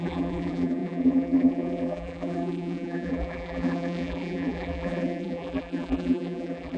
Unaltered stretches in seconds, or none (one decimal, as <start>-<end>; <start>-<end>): none